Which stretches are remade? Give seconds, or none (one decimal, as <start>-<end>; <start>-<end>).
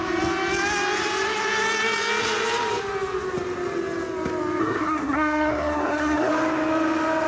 4.6-6.3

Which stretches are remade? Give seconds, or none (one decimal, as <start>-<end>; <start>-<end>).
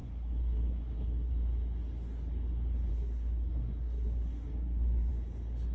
0.0-1.3; 2.9-5.1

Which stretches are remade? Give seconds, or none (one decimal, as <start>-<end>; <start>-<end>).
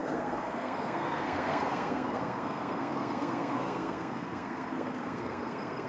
0.0-5.9